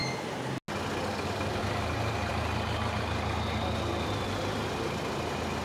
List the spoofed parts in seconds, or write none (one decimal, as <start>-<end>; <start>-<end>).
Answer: none